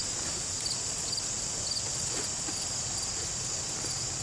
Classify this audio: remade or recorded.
recorded